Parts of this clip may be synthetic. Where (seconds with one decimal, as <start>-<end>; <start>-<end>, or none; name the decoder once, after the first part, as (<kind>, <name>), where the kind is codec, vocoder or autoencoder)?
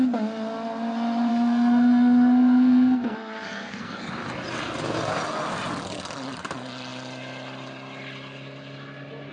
1.3-4.1 (codec, SNAC)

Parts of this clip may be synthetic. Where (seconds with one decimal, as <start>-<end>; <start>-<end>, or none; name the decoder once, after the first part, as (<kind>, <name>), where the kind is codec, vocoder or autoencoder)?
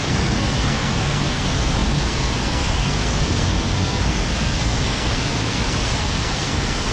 0.0-6.9 (codec, SNAC)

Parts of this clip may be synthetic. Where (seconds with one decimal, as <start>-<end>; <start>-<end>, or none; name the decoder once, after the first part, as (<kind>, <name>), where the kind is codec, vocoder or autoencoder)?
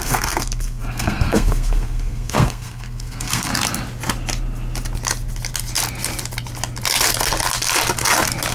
0.0-3.5 (codec, SNAC)